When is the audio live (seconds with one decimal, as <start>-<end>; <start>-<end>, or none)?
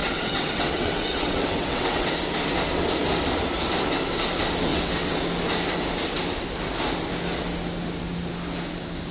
2.1-4.7; 5.2-9.1